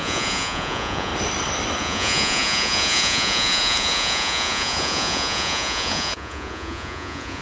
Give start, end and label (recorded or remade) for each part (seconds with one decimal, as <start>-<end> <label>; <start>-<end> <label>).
0.0-1.1 remade; 1.1-1.8 recorded; 1.8-7.4 remade